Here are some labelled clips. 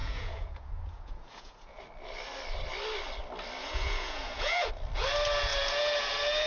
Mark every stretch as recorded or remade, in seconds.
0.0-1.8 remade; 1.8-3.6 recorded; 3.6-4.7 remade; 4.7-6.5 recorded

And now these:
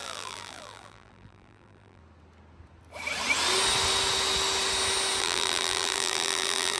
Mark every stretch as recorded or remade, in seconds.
0.0-2.0 remade; 2.0-5.2 recorded; 5.2-6.8 remade

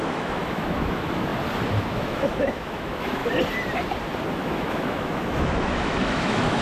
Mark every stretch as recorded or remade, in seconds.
0.0-1.3 remade; 1.3-1.8 recorded; 1.8-3.2 remade; 3.2-4.3 recorded; 4.3-6.6 remade

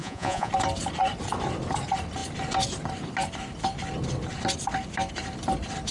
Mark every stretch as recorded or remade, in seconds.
0.0-0.5 remade; 0.5-5.9 recorded

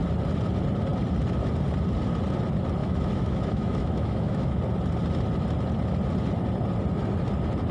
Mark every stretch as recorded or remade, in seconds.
0.0-2.8 recorded; 2.8-4.6 remade; 4.6-7.7 recorded

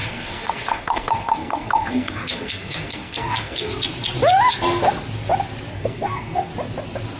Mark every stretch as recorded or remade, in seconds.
0.0-3.7 remade; 3.7-5.7 recorded; 5.7-6.5 remade; 6.5-7.2 recorded

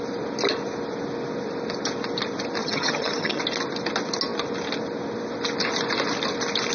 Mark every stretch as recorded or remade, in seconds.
0.0-2.6 recorded; 2.6-3.4 remade; 3.4-6.7 recorded